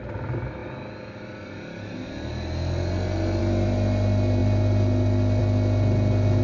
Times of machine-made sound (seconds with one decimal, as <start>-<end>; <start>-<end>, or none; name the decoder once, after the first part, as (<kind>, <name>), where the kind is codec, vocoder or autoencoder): none

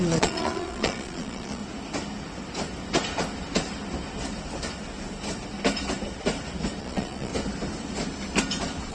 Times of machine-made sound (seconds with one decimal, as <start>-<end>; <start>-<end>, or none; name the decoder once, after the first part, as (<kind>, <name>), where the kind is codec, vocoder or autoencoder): 0.0-1.6 (vocoder, Vocos); 6.8-7.3

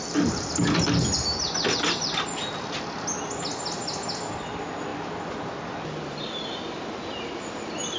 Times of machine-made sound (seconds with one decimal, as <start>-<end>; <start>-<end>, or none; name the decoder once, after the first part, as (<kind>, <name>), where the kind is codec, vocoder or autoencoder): none

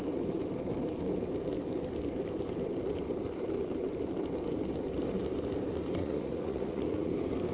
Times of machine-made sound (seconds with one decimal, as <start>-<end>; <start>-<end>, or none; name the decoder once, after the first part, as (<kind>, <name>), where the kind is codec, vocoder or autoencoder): 6.0-7.1 (vocoder, Vocos)

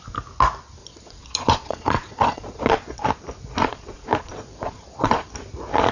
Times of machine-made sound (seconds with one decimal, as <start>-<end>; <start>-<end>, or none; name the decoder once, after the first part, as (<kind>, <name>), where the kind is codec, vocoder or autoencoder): 0.8-3.0 (vocoder, Vocos); 3.6-5.3

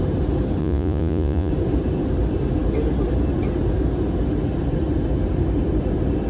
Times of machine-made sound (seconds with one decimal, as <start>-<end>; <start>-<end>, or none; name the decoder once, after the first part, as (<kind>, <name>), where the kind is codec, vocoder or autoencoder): 0.6-1.5 (vocoder, Vocos)

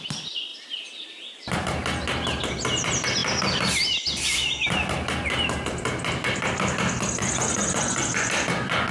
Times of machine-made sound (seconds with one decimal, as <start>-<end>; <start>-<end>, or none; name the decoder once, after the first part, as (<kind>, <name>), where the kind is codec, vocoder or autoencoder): 7.2-8.3 (vocoder, Vocos)

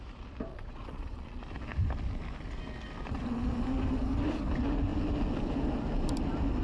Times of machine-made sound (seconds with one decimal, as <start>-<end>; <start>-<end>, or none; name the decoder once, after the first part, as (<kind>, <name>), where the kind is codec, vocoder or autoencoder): 0.5-1.4 (vocoder, Vocos)